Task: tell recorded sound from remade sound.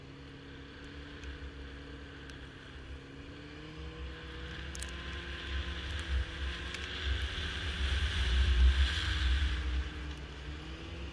recorded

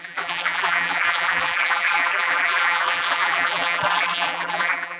remade